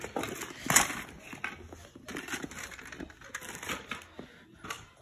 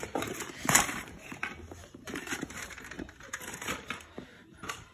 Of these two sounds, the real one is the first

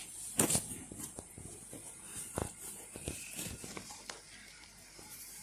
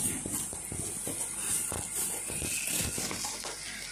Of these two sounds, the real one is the second